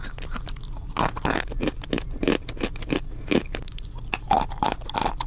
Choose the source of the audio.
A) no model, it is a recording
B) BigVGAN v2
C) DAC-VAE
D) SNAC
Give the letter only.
A